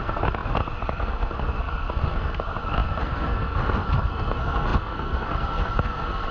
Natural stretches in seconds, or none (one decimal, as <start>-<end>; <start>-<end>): none